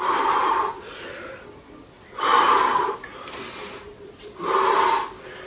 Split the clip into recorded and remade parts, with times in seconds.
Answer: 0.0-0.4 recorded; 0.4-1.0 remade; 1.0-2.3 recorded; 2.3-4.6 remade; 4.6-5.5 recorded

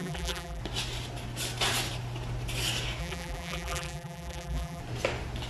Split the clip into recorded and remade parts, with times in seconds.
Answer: 0.0-0.6 remade; 0.6-3.0 recorded; 3.0-4.8 remade; 4.8-5.5 recorded

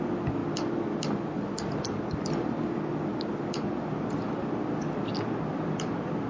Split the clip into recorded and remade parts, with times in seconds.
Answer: 0.0-0.4 recorded; 0.4-4.2 remade; 4.2-6.3 recorded